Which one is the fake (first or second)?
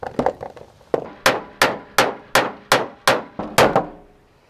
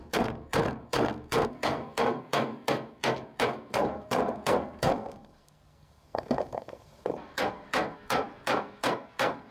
second